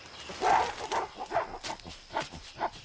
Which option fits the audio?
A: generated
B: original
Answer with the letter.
B